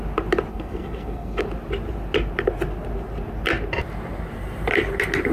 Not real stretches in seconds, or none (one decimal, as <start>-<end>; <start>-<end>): 0.5-1.4